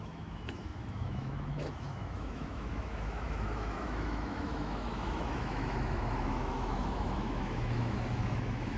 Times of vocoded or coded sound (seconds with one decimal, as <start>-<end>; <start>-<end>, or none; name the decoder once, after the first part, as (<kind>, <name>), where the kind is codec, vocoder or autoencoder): 0.0-8.8 (autoencoder, DAC-VAE)